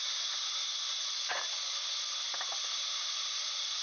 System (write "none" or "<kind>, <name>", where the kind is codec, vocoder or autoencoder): none